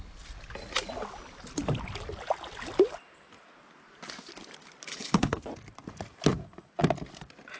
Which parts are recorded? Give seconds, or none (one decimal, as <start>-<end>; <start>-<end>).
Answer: 0.0-4.9; 5.4-7.6